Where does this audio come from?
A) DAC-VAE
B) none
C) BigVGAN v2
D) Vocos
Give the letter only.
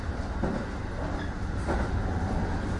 B